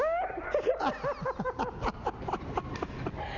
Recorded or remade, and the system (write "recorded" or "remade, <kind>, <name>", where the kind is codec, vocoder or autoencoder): recorded